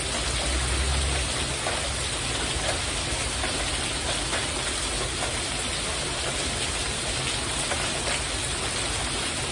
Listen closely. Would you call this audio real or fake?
real